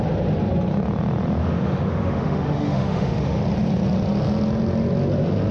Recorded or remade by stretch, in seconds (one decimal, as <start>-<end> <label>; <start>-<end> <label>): 0.0-1.4 recorded; 1.4-3.4 remade; 3.4-5.5 recorded